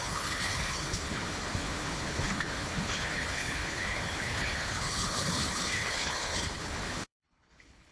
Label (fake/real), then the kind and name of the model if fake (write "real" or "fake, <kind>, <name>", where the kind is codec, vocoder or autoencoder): fake, codec, HILCodec